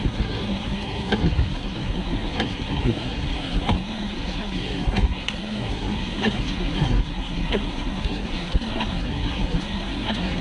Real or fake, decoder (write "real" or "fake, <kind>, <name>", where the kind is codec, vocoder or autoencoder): fake, codec, SNAC